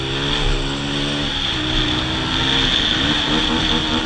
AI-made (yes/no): no